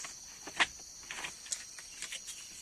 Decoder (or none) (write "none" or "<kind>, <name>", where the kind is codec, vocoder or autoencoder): none